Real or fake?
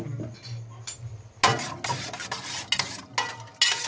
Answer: real